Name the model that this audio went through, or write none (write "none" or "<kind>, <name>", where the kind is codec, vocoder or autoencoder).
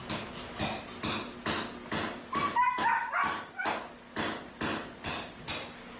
none